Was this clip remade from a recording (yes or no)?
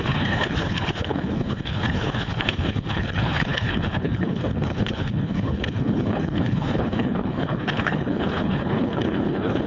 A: yes